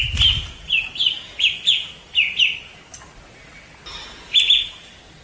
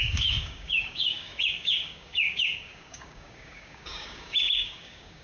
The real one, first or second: first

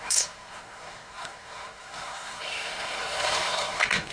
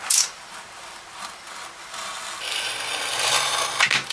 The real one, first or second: second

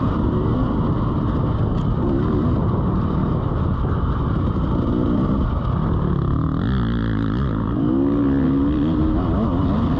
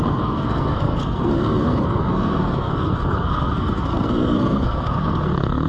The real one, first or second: first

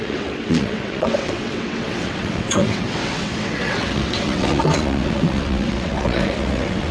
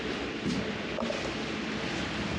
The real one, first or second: second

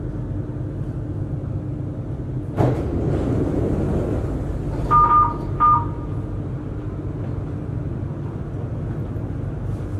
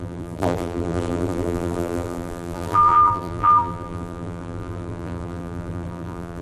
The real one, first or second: first